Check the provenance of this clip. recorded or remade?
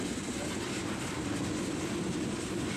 remade